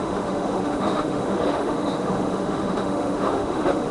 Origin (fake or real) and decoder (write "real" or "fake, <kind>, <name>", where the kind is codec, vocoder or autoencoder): fake, autoencoder, DAC-VAE